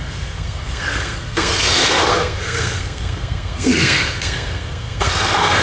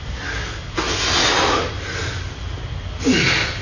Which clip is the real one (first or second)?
second